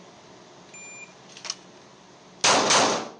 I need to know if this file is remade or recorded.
recorded